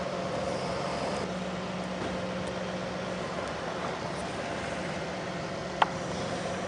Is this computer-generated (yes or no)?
no